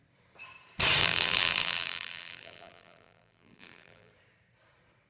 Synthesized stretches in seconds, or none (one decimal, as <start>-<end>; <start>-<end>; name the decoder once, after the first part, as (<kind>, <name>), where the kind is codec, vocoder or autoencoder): 1.0-4.1 (vocoder, BigVGAN v2)